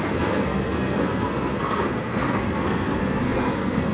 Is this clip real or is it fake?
fake